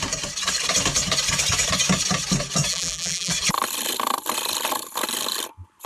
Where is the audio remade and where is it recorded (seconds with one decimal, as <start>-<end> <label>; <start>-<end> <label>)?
0.0-2.7 recorded; 2.7-3.3 remade; 3.3-5.9 recorded